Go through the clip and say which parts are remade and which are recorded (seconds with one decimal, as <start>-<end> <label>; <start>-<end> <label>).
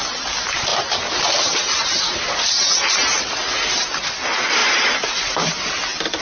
0.0-0.7 recorded; 0.7-2.9 remade; 2.9-4.6 recorded; 4.6-5.7 remade; 5.7-6.2 recorded